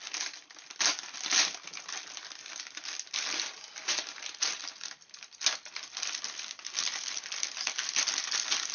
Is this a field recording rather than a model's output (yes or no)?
yes